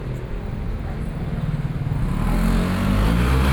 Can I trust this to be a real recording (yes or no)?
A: yes